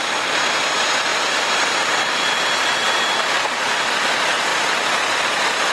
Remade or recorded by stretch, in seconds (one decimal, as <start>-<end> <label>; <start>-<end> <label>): 0.0-5.7 recorded